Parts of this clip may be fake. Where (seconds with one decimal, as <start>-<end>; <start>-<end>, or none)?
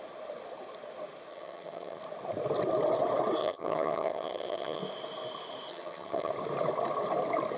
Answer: 1.3-2.0; 3.4-4.8; 5.7-6.3